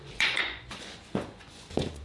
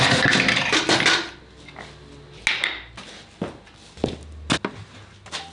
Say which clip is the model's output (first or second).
first